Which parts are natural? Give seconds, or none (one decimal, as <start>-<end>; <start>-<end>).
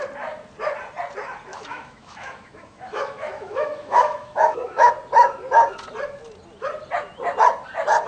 0.0-1.5; 4.9-8.1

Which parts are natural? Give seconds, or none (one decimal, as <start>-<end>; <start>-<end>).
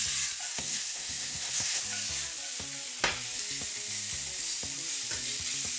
0.0-0.5; 1.8-5.8